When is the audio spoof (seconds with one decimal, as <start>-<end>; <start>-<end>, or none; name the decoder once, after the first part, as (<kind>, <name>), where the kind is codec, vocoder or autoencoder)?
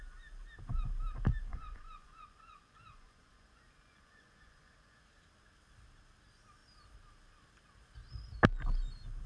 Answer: 1.5-5.0 (vocoder, Vocos)